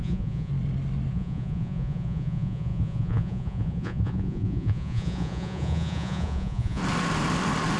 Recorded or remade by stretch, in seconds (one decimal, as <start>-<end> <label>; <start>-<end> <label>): 0.0-0.5 remade; 0.5-1.1 recorded; 1.1-6.8 remade; 6.8-7.8 recorded